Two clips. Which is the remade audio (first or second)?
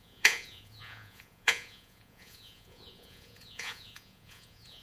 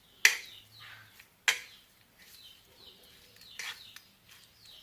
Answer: first